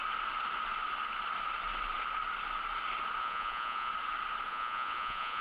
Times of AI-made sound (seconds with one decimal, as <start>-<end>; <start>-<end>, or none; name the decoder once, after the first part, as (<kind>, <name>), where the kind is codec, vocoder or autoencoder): 3.2-3.9 (vocoder, Vocos); 4.5-5.4